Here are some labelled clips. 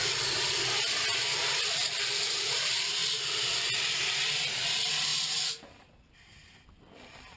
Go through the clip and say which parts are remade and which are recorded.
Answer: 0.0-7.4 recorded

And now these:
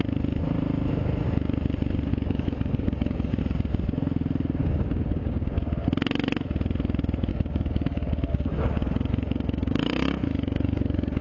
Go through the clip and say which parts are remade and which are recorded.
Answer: 0.0-2.1 recorded; 2.1-3.4 remade; 3.4-4.6 recorded; 4.6-5.6 remade; 5.6-7.3 recorded; 7.3-11.2 remade

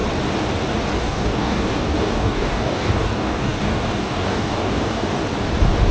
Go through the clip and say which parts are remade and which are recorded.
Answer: 0.0-1.0 recorded; 1.0-5.2 remade; 5.2-5.9 recorded

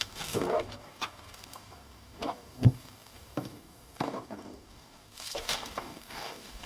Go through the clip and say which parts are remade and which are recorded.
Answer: 0.0-6.7 remade

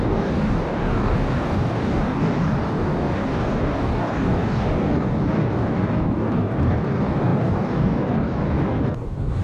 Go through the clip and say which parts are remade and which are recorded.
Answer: 0.0-9.4 remade